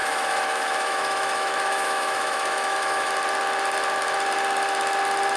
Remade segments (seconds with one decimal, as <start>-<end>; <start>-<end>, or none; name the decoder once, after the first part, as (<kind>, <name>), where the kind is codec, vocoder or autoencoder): 0.0-3.1 (autoencoder, DAC-VAE)